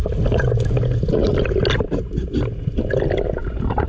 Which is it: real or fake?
real